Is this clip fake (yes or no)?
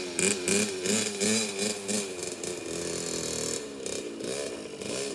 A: no